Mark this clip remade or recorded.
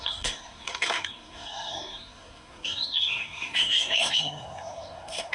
remade